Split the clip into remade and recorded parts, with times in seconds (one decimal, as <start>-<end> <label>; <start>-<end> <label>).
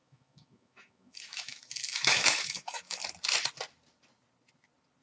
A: 0.0-3.0 remade; 3.0-5.0 recorded